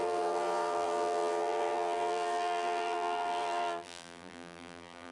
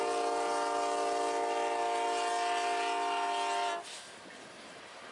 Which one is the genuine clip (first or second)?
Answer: second